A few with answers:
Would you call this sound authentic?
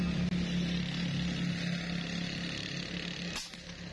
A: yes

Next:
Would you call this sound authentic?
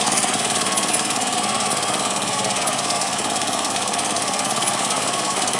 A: no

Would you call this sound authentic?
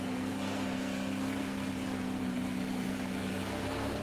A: no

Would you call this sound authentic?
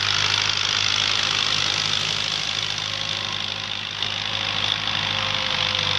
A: yes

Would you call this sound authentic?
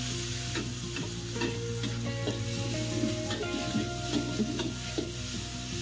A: yes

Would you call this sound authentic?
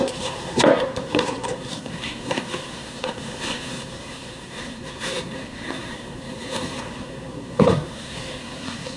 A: no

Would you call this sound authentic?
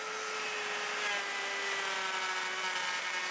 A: yes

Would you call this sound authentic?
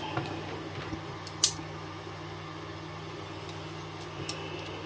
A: yes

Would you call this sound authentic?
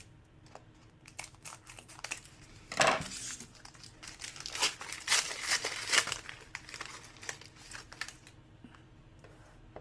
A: yes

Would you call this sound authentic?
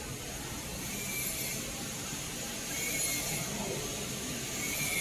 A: yes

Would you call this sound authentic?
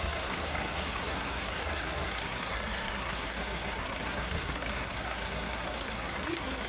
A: no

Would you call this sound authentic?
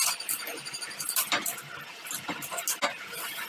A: yes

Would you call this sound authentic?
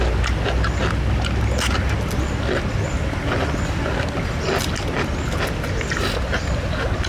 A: yes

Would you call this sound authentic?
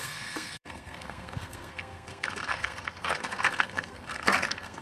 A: no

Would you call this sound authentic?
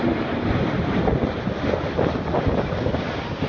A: yes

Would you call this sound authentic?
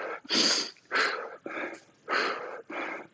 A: yes